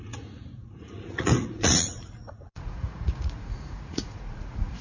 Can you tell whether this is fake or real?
fake